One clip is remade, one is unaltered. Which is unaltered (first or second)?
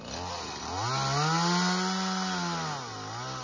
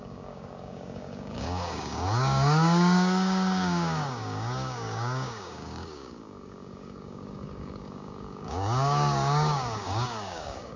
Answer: first